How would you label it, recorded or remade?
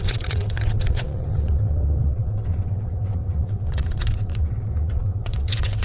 remade